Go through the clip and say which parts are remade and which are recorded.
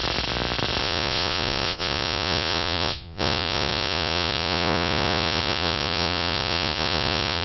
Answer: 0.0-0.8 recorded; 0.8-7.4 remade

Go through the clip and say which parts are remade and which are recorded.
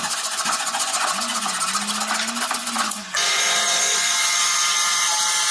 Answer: 0.0-1.5 remade; 1.5-2.6 recorded; 2.6-5.1 remade; 5.1-5.5 recorded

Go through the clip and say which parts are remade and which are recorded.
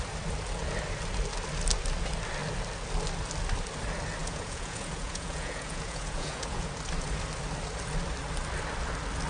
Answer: 0.0-4.2 recorded; 4.2-6.7 remade; 6.7-9.3 recorded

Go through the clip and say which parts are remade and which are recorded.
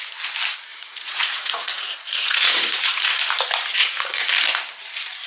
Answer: 0.0-0.7 recorded; 0.7-3.2 remade; 3.2-3.8 recorded; 3.8-4.3 remade; 4.3-5.3 recorded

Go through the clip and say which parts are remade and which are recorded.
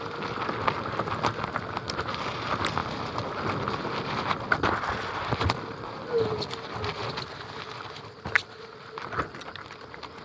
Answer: 0.0-10.2 recorded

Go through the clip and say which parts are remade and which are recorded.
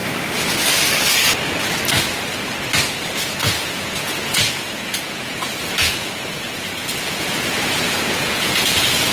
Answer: 0.0-3.4 recorded; 3.4-9.1 remade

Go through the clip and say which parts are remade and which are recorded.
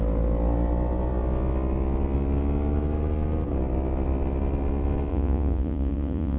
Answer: 0.0-5.1 recorded; 5.1-6.4 remade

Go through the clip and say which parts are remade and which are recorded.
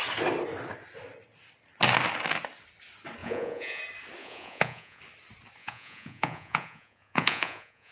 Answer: 0.0-3.2 recorded; 3.2-3.8 remade; 3.8-4.2 recorded; 4.2-5.0 remade; 5.0-5.6 recorded; 5.6-7.9 remade